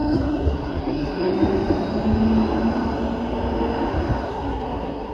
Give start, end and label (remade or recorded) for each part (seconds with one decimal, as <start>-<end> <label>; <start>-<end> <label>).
0.0-1.3 remade; 1.3-4.3 recorded; 4.3-5.1 remade